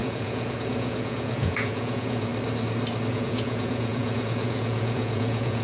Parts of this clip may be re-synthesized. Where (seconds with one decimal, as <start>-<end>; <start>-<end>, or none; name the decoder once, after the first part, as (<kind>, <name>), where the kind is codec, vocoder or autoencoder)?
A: 0.0-2.3 (vocoder, Vocos); 3.1-5.6